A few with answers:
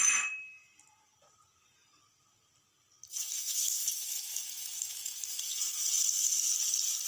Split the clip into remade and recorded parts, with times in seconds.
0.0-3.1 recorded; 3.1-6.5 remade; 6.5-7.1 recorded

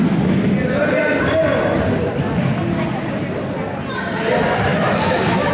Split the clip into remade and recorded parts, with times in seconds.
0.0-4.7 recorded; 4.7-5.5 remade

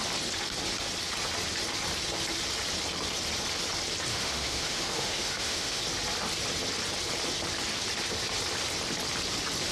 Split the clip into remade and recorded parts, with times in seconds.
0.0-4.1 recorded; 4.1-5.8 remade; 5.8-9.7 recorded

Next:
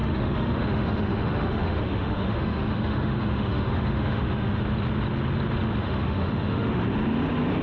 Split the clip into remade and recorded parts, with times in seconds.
0.0-4.6 remade; 4.6-5.8 recorded; 5.8-6.8 remade; 6.8-7.6 recorded

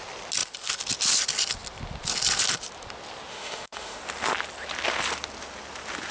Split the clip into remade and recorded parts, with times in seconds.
0.0-3.3 recorded; 3.3-4.0 remade; 4.0-6.1 recorded

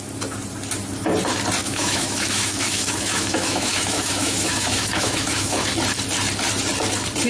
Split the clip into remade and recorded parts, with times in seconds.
0.0-1.6 recorded; 1.6-5.7 remade; 5.7-7.3 recorded

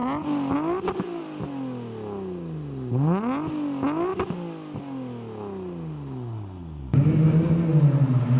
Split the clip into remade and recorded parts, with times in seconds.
0.0-8.4 recorded

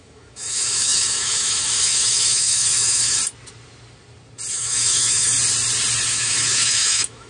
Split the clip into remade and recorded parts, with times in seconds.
0.0-3.2 remade; 3.2-4.5 recorded; 4.5-5.3 remade; 5.3-6.1 recorded; 6.1-7.3 remade